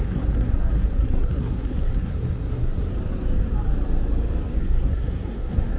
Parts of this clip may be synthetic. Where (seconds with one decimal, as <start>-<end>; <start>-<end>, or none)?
0.0-2.9; 4.6-5.8